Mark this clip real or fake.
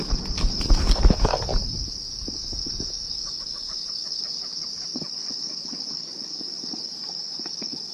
fake